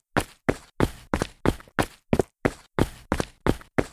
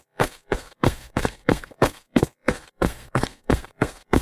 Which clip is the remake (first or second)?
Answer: second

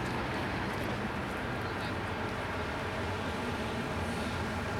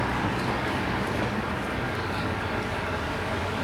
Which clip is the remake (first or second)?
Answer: second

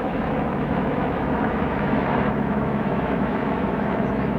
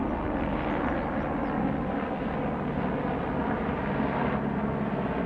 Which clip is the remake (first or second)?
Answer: first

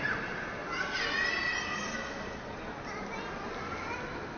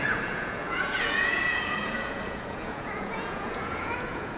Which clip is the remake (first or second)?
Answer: second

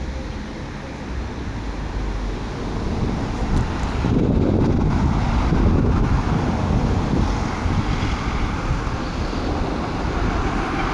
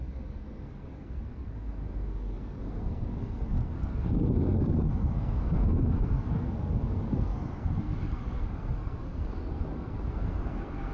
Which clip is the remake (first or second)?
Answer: second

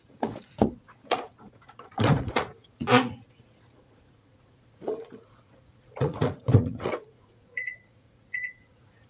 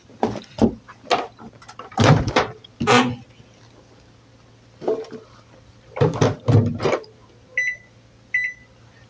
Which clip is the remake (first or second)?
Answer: first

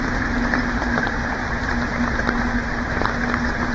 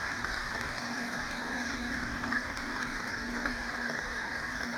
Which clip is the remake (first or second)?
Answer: second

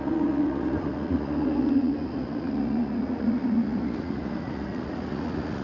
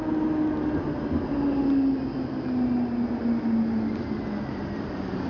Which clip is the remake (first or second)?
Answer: first